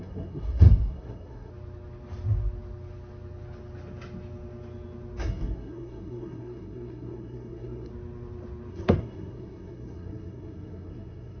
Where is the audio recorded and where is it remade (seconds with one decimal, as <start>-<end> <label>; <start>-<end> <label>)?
0.0-1.5 remade; 1.5-5.2 recorded; 5.2-7.9 remade; 7.9-8.7 recorded; 8.7-11.4 remade